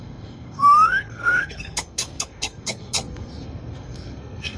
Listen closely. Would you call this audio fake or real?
fake